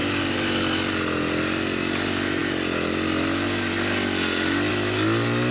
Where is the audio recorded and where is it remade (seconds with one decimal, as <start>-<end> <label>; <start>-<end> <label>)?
0.0-5.5 recorded